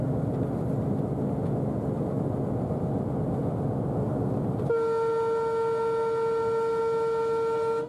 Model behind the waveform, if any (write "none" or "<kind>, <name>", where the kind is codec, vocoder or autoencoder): none